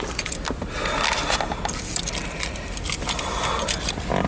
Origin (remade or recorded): recorded